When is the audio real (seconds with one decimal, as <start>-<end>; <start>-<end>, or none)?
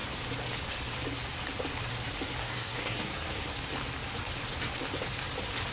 0.0-2.4; 3.4-5.7